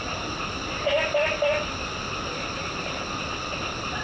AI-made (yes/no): no